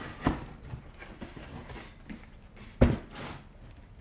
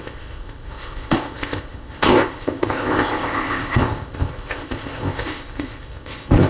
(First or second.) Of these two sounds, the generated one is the second